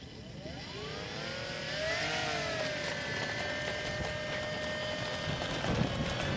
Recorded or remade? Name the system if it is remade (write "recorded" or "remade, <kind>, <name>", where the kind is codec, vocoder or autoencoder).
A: recorded